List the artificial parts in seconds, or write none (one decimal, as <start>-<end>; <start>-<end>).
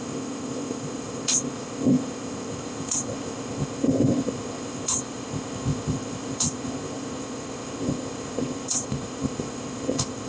0.0-10.3